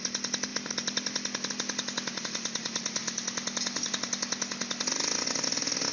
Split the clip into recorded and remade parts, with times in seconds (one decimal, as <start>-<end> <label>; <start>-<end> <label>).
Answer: 0.0-5.9 recorded